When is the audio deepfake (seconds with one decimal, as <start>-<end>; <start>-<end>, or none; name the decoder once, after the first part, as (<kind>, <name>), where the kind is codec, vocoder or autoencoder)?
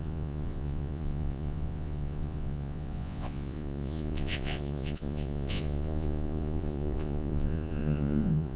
0.0-8.6 (vocoder, Vocos)